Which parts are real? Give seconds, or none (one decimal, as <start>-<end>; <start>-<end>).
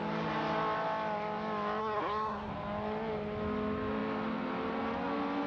0.0-1.8; 2.5-5.5